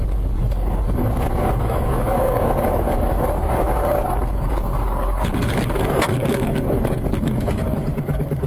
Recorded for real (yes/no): no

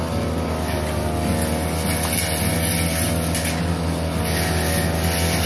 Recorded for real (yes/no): yes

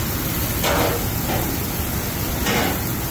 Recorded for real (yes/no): yes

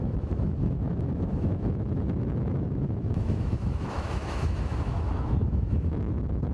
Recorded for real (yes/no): no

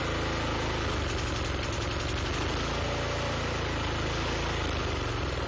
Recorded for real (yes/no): yes